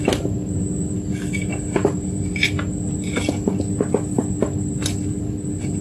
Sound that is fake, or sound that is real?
real